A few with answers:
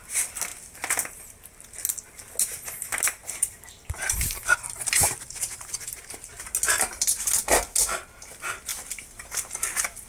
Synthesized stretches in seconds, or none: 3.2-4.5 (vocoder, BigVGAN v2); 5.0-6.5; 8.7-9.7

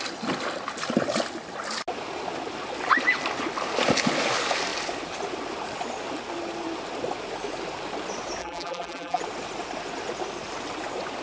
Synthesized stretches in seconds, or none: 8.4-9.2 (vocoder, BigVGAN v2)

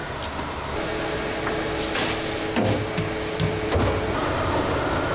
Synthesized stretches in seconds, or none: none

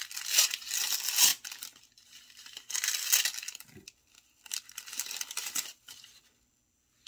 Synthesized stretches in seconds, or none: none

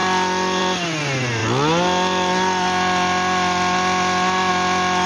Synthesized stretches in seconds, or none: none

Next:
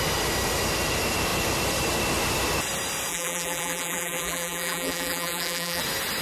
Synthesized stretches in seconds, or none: 3.1-5.8 (vocoder, BigVGAN v2)